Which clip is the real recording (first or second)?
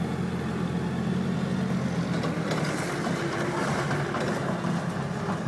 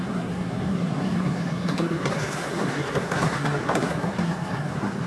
first